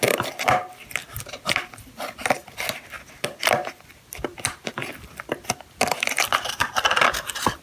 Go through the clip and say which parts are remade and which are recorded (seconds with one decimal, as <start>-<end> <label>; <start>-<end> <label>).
0.0-7.6 recorded